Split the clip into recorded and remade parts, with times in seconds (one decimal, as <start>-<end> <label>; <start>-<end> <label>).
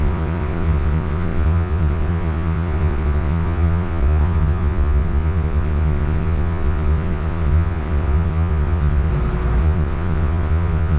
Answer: 0.0-9.1 remade; 9.1-9.6 recorded; 9.6-11.0 remade